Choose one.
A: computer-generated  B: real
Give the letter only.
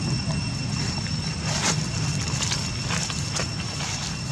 B